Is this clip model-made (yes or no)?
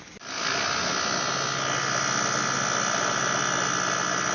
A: no